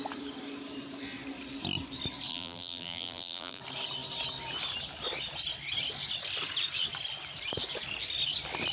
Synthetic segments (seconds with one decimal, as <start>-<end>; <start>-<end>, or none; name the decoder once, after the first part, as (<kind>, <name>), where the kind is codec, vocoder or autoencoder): 2.3-3.6 (vocoder, BigVGAN v2)